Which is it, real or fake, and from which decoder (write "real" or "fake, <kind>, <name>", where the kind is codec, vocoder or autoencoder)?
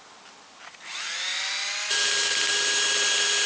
real